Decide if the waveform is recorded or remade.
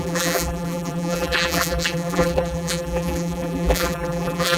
remade